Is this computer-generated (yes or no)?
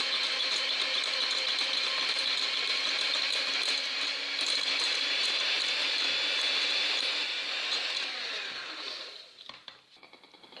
yes